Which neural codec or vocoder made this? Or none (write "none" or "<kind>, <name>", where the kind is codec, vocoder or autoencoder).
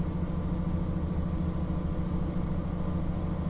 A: none